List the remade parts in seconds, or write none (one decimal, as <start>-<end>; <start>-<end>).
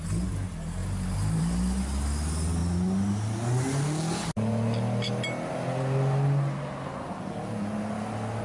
none